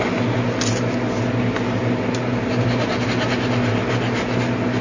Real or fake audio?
real